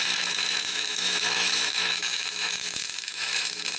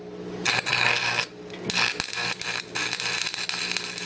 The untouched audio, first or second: second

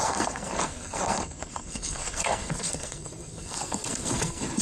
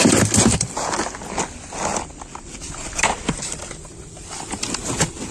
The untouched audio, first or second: second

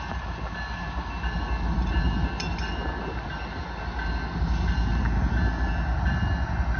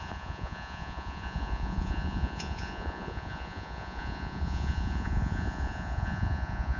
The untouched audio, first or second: first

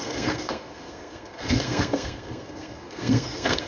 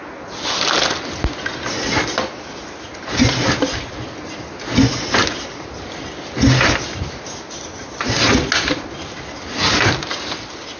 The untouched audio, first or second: second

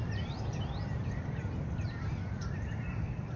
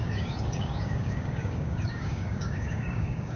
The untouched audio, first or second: first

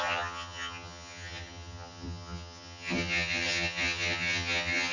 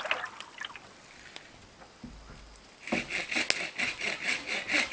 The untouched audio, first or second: second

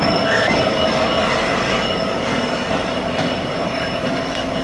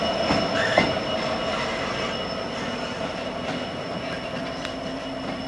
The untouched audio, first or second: second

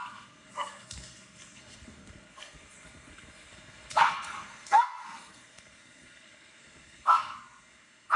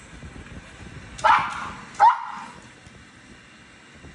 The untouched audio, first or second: second